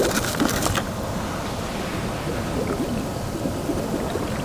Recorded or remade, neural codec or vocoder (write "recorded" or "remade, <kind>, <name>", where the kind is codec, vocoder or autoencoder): recorded